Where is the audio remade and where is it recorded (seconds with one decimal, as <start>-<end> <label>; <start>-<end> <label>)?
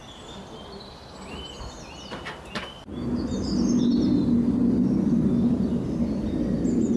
0.0-7.0 recorded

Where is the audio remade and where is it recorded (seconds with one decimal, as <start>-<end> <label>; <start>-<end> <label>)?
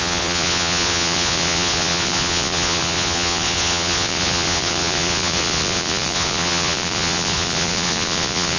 0.0-8.6 remade